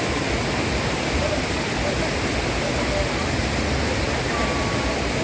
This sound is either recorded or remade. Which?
recorded